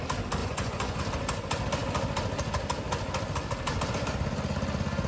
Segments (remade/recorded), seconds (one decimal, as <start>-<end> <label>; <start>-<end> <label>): 0.0-0.4 recorded; 0.4-1.0 remade; 1.0-5.1 recorded